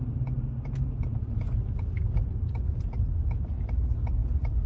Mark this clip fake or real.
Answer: real